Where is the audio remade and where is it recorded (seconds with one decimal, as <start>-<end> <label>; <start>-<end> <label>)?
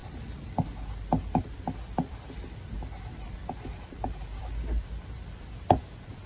0.0-6.3 recorded